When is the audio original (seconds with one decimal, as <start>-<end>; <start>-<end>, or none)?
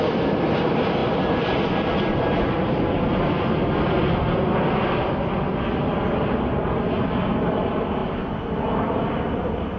0.0-9.8